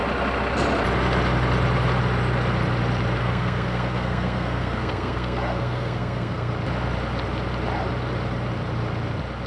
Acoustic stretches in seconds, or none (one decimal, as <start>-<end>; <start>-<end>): 0.0-3.2; 6.5-9.5

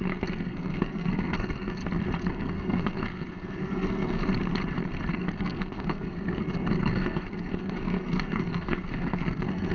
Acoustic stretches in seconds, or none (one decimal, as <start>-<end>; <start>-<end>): 1.8-2.3; 4.3-5.1